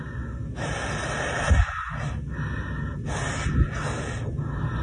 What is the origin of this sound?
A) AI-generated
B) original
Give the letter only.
B